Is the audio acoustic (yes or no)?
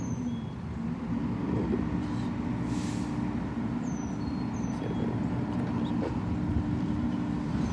yes